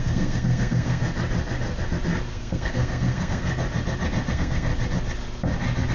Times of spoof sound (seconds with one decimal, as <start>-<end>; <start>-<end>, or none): 0.0-1.0; 2.3-3.5; 4.3-4.7